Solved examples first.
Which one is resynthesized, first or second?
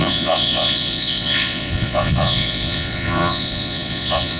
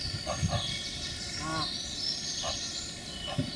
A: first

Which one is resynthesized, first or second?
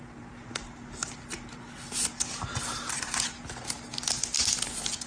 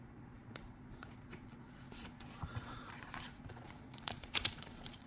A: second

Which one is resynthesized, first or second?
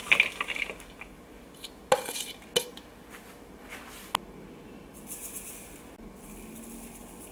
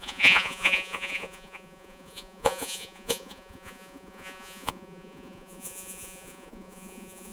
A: second